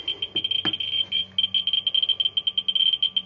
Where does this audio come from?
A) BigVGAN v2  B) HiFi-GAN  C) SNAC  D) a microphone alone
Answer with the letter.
D